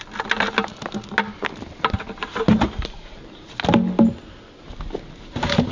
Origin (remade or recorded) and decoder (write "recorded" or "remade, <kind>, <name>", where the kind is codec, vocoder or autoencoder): recorded